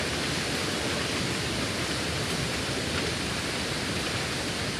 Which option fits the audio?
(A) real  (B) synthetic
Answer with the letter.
A